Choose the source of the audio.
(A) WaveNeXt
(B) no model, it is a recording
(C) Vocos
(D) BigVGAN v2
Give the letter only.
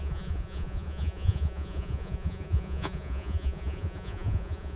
C